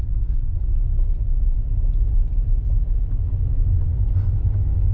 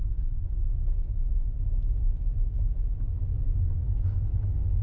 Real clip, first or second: first